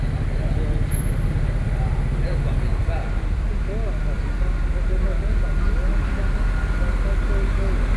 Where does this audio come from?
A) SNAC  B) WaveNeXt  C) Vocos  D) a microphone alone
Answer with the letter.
D